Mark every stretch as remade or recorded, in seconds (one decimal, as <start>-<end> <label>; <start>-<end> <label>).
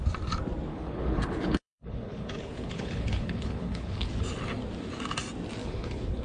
0.0-0.7 recorded; 0.7-4.1 remade; 4.1-5.6 recorded; 5.6-6.2 remade